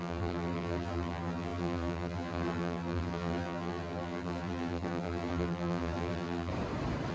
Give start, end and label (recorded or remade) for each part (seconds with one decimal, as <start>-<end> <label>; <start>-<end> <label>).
0.0-6.5 remade; 6.5-7.1 recorded